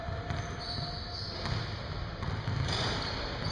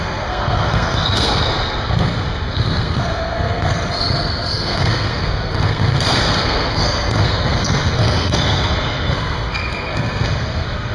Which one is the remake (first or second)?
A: second